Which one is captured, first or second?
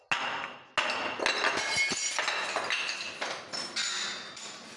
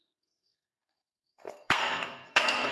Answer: first